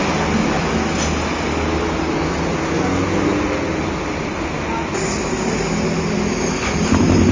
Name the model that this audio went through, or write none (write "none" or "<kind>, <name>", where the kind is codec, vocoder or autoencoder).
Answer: none